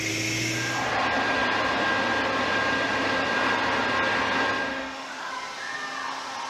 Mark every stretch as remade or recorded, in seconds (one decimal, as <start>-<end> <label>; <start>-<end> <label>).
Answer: 0.0-4.7 recorded; 4.7-5.3 remade; 5.3-6.5 recorded